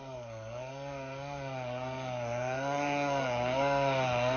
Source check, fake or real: fake